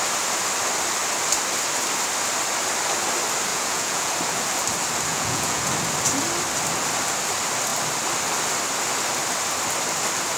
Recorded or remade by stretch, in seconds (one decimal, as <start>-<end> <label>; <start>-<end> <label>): 0.0-3.5 recorded; 3.5-4.1 remade; 4.1-5.1 recorded; 5.1-5.7 remade; 5.7-10.4 recorded

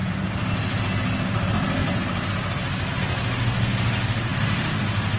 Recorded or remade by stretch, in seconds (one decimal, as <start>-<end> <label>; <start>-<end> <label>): 0.0-0.5 remade; 0.5-1.8 recorded; 1.8-2.3 remade; 2.3-4.3 recorded; 4.3-4.8 remade; 4.8-5.2 recorded